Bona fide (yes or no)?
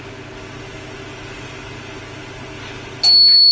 yes